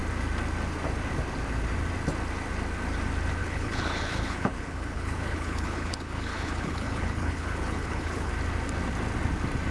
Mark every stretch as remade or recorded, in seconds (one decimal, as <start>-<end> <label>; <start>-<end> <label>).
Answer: 0.0-3.4 recorded; 3.4-8.3 remade; 8.3-9.7 recorded